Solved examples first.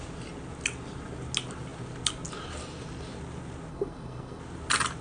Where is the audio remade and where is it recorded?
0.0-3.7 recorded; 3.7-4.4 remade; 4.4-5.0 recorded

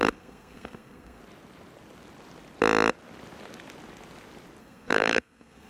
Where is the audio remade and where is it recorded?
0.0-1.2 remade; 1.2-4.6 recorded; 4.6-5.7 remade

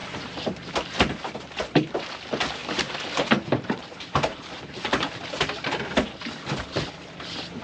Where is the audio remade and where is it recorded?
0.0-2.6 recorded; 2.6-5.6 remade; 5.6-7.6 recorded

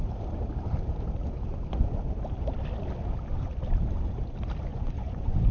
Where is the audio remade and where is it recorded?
0.0-4.7 recorded; 4.7-5.5 remade